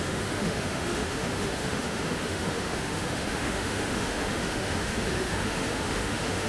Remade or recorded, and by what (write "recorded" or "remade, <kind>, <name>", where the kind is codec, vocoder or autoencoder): remade, autoencoder, DAC-VAE